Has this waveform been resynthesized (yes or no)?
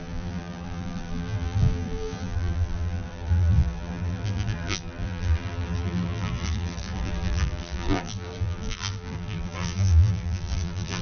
yes